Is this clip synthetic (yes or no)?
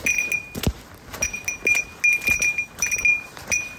no